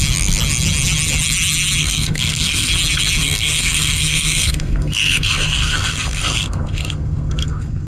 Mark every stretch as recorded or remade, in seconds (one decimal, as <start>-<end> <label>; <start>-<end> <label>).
0.0-1.8 recorded; 1.8-2.7 remade; 2.7-3.2 recorded; 3.2-7.9 remade